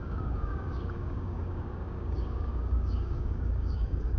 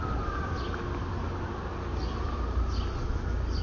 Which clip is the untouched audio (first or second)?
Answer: second